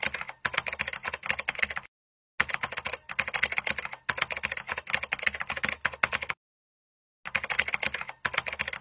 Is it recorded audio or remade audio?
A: recorded